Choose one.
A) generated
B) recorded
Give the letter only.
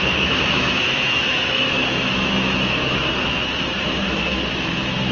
A